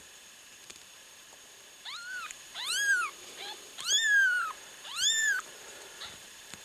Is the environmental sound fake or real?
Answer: fake